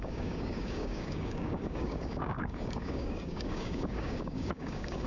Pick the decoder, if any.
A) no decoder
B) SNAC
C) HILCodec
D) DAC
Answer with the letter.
D